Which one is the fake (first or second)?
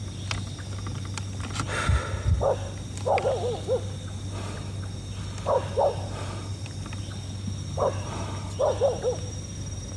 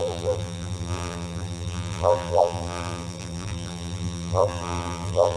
second